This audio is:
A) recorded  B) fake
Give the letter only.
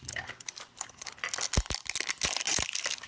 A